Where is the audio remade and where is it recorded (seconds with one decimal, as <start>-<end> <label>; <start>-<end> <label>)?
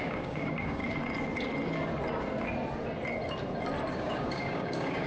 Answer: 0.0-0.8 remade; 0.8-3.9 recorded; 3.9-5.1 remade